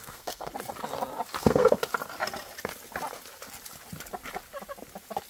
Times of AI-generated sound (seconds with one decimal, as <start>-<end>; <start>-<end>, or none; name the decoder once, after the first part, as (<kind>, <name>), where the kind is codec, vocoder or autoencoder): 0.0-0.5 (codec, SNAC); 1.4-1.8